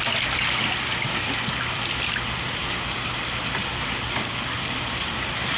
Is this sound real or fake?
fake